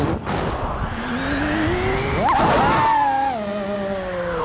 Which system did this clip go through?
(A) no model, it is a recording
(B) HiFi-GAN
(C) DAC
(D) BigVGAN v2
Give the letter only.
A